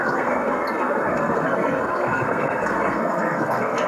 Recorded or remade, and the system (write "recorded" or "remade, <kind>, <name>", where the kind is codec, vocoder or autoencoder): remade, codec, SNAC